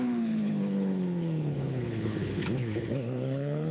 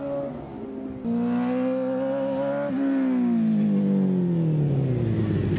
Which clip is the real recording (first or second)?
second